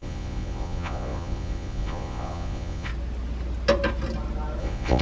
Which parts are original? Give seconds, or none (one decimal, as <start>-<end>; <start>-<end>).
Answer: 2.9-4.6